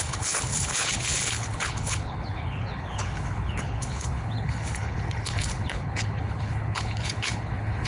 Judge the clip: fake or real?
fake